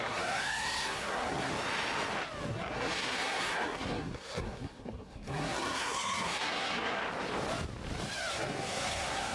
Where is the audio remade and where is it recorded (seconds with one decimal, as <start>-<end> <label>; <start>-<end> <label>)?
0.0-1.5 remade; 1.5-2.5 recorded; 2.5-7.0 remade; 7.0-8.3 recorded; 8.3-9.3 remade